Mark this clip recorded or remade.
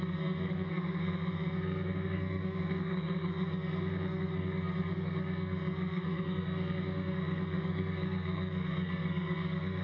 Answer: remade